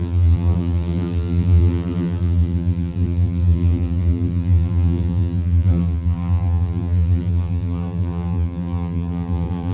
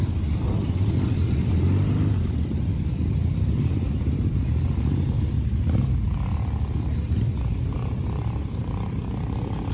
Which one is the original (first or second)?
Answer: second